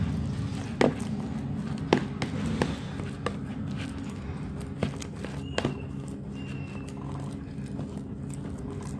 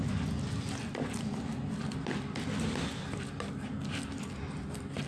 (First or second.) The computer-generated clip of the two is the second